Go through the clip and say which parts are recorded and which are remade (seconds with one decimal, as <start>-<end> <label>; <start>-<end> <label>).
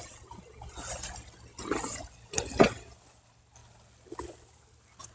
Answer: 0.0-5.1 recorded